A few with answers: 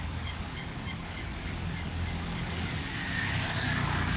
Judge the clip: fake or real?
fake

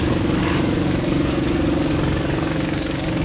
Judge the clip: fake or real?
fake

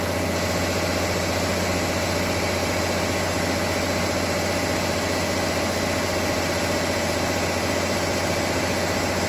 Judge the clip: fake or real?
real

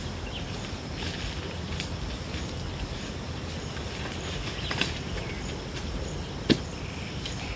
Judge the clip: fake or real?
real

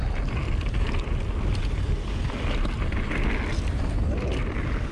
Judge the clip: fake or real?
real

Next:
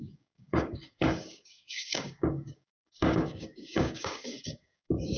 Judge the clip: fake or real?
fake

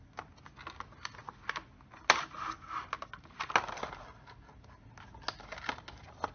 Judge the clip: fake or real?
real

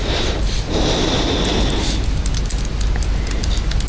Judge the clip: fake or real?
real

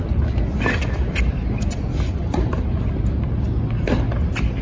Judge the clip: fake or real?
real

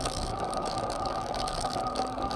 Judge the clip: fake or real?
fake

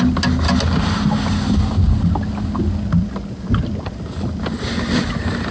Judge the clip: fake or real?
real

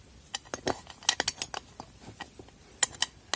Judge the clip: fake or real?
real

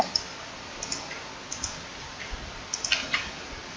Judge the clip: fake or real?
real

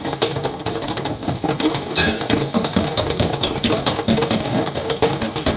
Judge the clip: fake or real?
fake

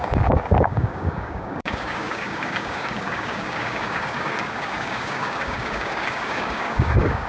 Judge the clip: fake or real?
fake